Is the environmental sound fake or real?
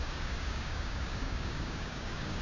fake